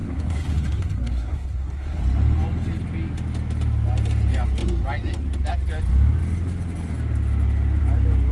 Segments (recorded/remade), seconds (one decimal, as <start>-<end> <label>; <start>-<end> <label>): 0.0-2.0 remade; 2.0-8.3 recorded